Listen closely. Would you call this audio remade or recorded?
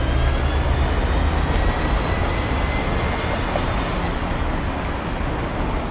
recorded